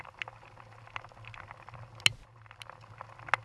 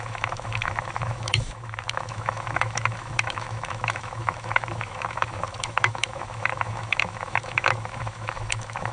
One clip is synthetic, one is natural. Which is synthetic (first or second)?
second